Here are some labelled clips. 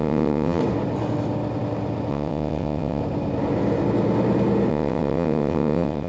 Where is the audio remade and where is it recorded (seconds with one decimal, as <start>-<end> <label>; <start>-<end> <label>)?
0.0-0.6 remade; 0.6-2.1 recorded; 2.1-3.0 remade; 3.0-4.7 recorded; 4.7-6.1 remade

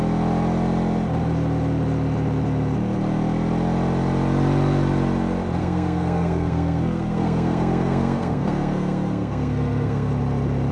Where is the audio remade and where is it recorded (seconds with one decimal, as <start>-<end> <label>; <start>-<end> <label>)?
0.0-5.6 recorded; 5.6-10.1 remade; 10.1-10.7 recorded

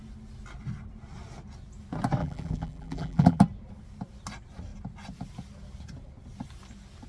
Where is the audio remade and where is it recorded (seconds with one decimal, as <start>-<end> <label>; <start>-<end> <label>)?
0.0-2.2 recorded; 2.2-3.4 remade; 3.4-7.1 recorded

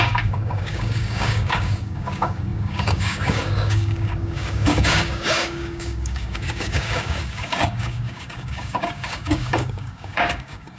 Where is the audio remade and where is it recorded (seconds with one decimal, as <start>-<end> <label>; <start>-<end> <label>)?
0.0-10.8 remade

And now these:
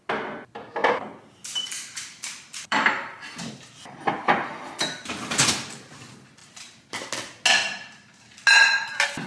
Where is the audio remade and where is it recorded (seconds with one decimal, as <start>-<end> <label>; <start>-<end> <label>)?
0.0-0.8 recorded; 0.8-4.7 remade; 4.7-6.4 recorded; 6.4-7.1 remade; 7.1-7.6 recorded; 7.6-8.2 remade; 8.2-9.3 recorded

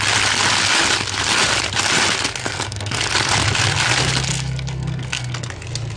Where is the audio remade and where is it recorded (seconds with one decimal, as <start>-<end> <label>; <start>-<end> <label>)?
0.0-2.4 recorded; 2.4-3.0 remade; 3.0-4.3 recorded; 4.3-5.5 remade; 5.5-6.0 recorded

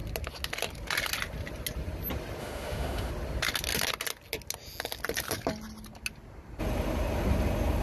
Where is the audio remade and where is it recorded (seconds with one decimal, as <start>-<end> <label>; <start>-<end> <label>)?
0.0-2.4 recorded; 2.4-3.1 remade; 3.1-7.8 recorded

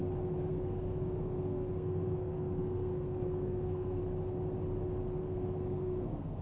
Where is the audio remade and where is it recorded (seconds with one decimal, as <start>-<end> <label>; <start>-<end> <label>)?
0.0-0.5 recorded; 0.5-4.0 remade; 4.0-5.2 recorded; 5.2-6.4 remade